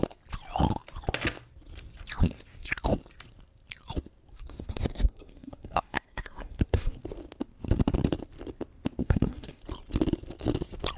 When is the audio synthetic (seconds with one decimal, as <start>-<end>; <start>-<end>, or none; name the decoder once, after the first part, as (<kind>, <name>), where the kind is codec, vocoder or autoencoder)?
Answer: 2.2-2.7 (codec, SNAC); 4.3-7.0; 9.0-9.6